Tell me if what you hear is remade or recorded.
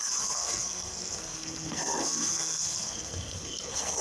remade